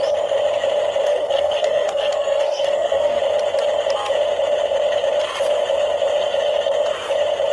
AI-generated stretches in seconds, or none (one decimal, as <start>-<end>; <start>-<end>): 1.1-3.2